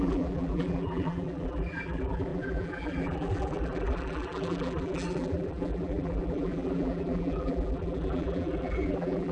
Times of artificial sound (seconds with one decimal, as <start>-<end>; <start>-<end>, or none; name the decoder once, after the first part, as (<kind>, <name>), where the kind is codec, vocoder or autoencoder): 0.0-9.3 (vocoder, BigVGAN v2)